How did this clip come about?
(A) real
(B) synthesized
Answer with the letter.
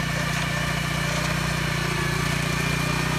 A